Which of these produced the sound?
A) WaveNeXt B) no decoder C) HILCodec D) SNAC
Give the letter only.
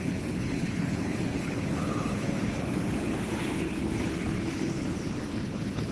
C